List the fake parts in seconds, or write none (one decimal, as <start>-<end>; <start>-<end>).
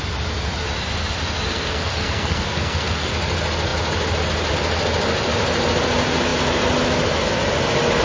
1.5-3.1